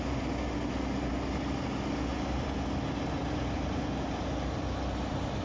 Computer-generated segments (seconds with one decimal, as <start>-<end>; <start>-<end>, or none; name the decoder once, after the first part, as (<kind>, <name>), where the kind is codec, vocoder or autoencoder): none